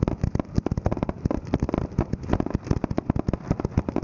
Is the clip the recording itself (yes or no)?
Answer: yes